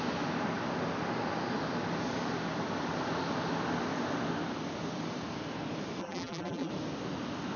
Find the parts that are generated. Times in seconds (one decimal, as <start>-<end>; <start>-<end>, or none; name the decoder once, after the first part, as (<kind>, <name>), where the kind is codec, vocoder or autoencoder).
6.0-6.7 (vocoder, BigVGAN v2)